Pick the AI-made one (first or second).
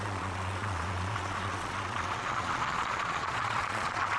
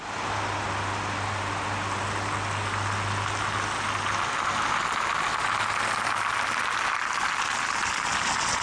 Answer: first